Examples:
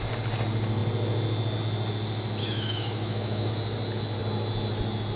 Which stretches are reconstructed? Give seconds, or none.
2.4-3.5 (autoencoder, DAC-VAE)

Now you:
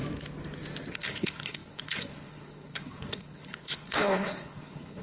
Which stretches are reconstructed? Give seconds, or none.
0.9-5.0 (codec, HILCodec)